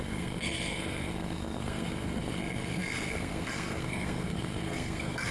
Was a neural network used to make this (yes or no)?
yes